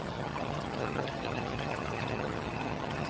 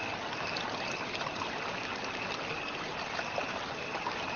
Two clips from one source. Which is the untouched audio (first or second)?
second